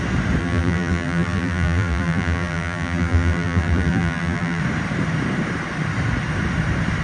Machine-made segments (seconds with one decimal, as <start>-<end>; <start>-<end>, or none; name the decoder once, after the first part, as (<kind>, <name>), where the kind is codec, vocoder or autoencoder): 0.4-4.6 (vocoder, BigVGAN v2)